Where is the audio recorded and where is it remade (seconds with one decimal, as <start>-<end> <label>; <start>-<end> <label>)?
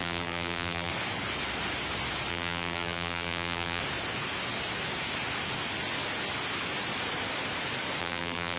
0.0-0.9 remade; 0.9-2.3 recorded; 2.3-3.8 remade; 3.8-8.0 recorded; 8.0-8.6 remade